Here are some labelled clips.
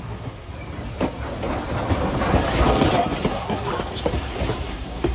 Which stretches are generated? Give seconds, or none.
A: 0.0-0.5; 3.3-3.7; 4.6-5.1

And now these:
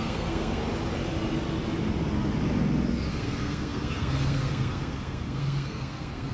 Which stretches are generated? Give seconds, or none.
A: 0.0-0.6; 3.1-6.3

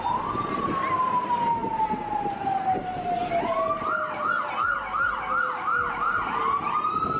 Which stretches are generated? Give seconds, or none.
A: none

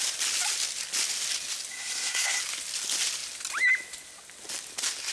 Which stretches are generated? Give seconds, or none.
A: 1.7-2.4

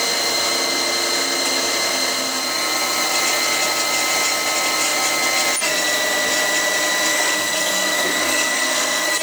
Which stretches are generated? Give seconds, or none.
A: 7.1-9.2

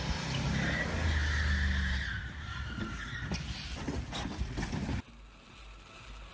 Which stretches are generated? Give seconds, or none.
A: none

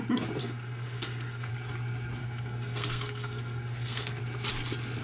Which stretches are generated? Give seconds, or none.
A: 0.4-1.5; 2.2-4.2